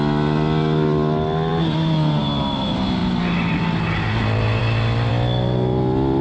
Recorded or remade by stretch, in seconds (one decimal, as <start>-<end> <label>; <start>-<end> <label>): 0.0-6.2 recorded